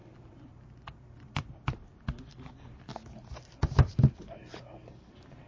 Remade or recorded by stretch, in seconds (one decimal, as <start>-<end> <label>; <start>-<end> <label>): 0.0-1.5 remade; 1.5-5.5 recorded